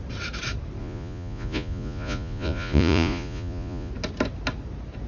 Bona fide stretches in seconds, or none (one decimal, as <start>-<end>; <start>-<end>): 0.0-0.8; 3.9-5.1